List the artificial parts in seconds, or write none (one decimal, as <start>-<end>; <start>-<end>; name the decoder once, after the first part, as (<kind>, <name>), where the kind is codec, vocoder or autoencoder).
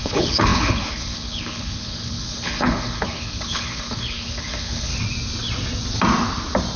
0.0-4.9 (codec, HILCodec)